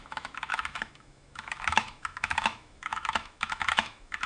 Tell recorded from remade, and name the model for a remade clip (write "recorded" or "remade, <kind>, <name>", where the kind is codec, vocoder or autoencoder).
remade, autoencoder, DAC-VAE